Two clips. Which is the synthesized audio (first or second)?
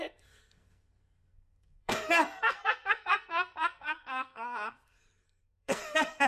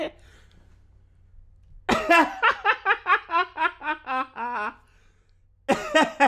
first